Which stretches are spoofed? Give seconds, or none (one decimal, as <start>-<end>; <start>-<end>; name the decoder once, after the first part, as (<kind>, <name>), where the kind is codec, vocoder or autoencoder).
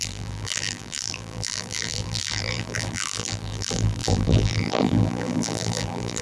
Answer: 0.0-6.2 (vocoder, BigVGAN v2)